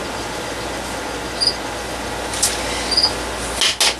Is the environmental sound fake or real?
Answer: real